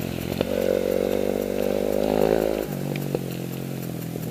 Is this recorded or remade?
recorded